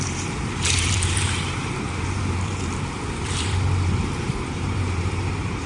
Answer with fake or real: fake